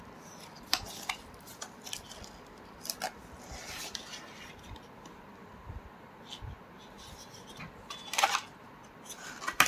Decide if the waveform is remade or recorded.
recorded